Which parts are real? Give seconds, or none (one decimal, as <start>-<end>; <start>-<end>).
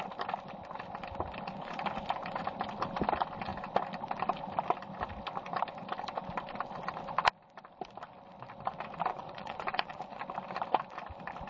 0.0-9.1; 10.2-11.5